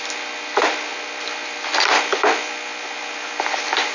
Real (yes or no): yes